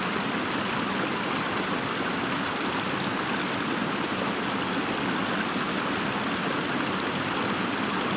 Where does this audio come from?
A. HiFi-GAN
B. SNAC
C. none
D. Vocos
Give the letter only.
C